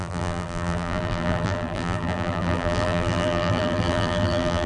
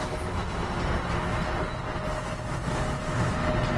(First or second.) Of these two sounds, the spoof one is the first